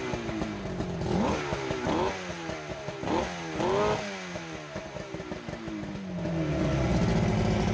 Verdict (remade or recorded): recorded